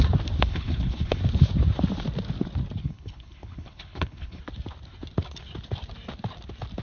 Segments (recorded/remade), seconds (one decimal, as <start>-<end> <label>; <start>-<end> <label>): 0.0-0.5 recorded; 0.5-1.2 remade; 1.2-2.8 recorded; 2.8-4.4 remade; 4.4-6.8 recorded